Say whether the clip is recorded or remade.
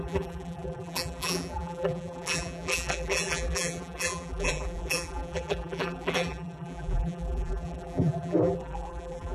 remade